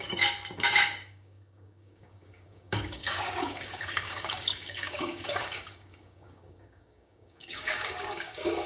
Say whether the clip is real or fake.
fake